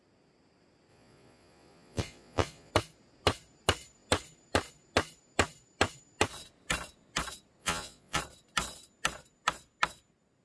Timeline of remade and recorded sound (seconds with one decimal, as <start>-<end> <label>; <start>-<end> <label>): 0.0-0.9 recorded; 0.9-2.7 remade; 2.7-7.6 recorded; 7.6-8.2 remade; 8.2-10.4 recorded